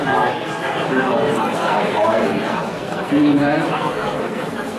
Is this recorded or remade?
remade